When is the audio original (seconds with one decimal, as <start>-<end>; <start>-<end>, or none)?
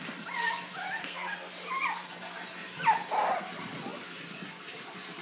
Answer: 0.0-1.0; 1.5-5.2